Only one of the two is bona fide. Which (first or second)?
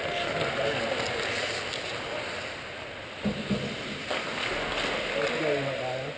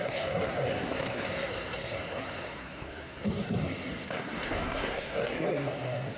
first